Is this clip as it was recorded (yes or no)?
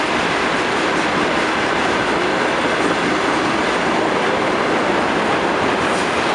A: yes